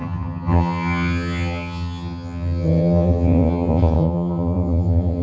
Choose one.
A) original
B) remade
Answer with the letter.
B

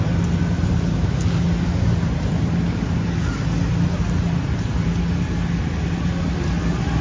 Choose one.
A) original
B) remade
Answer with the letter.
A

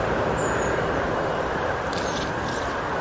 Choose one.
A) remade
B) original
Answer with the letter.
B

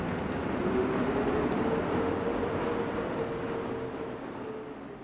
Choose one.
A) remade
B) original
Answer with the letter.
B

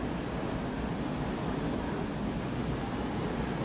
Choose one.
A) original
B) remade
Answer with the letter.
A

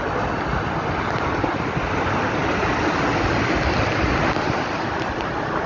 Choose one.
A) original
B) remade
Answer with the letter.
A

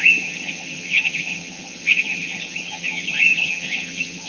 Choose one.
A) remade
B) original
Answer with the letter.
A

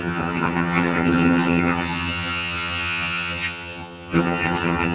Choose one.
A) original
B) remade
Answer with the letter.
B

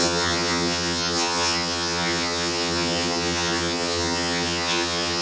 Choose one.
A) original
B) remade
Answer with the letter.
B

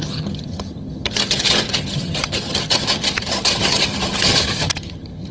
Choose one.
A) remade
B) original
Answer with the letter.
A